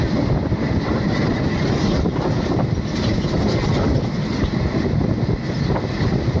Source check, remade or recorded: recorded